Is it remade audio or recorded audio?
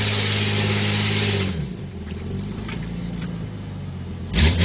remade